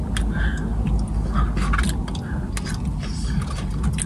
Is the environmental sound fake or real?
real